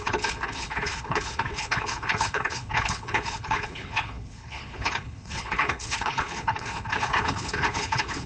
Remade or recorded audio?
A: remade